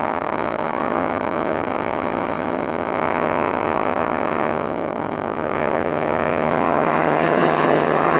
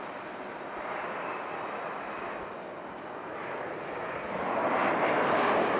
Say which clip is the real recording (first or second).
second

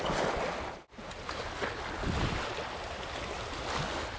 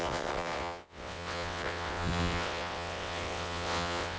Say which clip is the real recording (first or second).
first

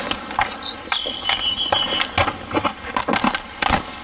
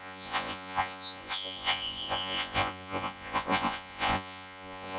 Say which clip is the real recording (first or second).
first